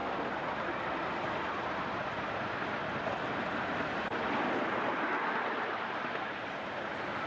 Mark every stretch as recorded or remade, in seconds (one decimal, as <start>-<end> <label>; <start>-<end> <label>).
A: 0.0-7.3 recorded